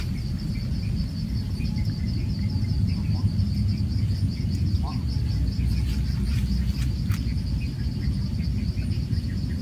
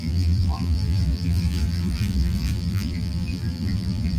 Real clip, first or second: first